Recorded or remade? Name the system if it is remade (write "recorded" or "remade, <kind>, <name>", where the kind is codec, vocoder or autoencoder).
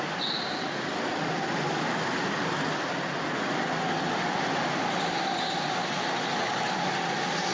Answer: recorded